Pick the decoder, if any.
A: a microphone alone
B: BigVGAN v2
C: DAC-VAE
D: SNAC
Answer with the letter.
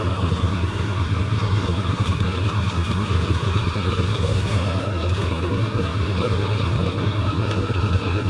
D